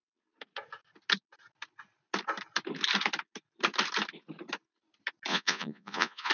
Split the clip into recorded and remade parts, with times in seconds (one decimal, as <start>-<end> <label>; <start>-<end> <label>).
0.0-5.3 recorded; 5.3-6.3 remade